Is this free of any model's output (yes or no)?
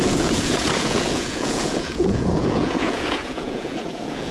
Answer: no